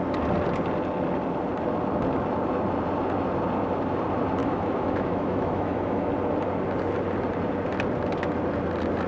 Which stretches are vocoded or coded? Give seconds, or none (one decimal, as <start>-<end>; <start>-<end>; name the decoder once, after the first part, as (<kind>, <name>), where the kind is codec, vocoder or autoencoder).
4.4-6.1 (autoencoder, DAC-VAE)